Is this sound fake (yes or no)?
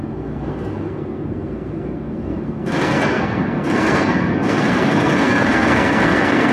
yes